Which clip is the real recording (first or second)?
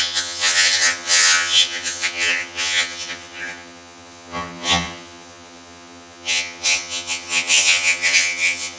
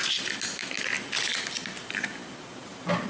second